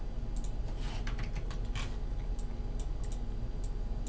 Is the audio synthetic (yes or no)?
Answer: no